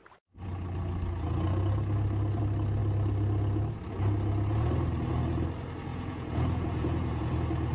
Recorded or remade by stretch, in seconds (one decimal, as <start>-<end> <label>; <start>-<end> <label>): 0.0-5.9 recorded; 5.9-7.3 remade; 7.3-7.7 recorded